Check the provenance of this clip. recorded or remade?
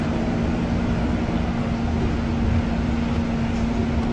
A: recorded